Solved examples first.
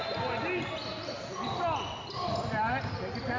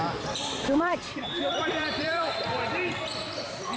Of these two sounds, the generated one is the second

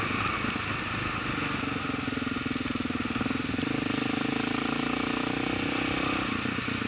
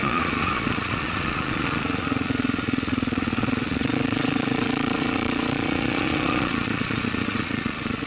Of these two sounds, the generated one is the second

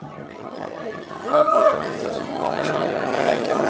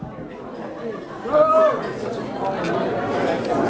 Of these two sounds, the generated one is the first